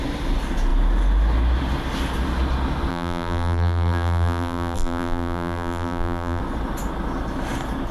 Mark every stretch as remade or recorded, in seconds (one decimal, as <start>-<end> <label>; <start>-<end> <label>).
0.0-2.9 recorded; 2.9-6.4 remade; 6.4-7.9 recorded